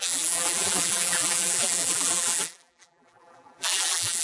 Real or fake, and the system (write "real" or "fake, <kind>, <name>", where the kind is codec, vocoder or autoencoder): fake, vocoder, BigVGAN v2